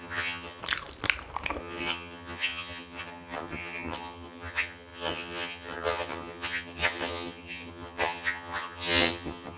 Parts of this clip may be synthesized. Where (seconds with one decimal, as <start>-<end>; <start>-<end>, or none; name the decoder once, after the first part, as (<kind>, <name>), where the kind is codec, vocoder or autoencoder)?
0.0-0.6 (vocoder, HiFi-GAN); 1.6-9.6

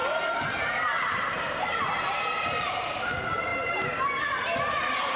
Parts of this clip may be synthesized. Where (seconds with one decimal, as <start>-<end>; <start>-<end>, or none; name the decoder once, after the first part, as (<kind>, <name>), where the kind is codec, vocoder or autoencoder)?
0.0-2.7 (vocoder, BigVGAN v2); 3.5-5.2

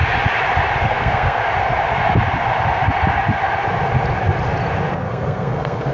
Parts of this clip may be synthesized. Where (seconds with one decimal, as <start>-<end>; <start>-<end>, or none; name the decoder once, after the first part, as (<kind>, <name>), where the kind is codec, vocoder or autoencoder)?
0.8-1.4 (codec, SNAC); 4.9-5.9

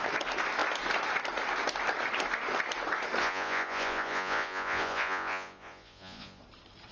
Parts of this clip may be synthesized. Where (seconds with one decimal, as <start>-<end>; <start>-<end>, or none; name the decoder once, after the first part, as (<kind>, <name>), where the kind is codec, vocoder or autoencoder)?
3.2-6.4 (vocoder, Vocos)

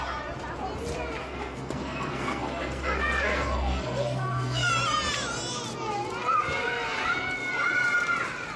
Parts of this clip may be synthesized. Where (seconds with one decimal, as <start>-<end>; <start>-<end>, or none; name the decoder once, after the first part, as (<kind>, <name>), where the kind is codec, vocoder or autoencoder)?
1.2-4.7 (codec, SNAC)

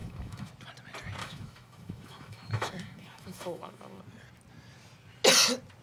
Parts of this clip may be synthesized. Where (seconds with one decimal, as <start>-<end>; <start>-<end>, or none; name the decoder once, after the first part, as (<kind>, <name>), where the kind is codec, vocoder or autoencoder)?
0.0-0.5 (autoencoder, DAC-VAE); 1.2-4.0

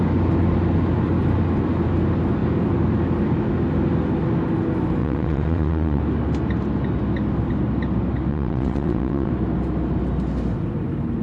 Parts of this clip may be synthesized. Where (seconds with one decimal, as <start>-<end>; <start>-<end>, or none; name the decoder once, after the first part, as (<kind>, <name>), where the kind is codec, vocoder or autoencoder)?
5.0-6.0 (vocoder, WaveNeXt); 8.3-9.3

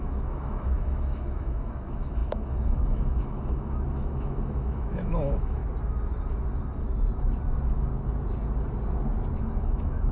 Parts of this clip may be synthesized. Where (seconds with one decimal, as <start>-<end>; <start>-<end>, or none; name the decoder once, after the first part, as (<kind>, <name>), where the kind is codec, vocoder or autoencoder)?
0.0-5.6 (autoencoder, DAC-VAE); 9.4-10.1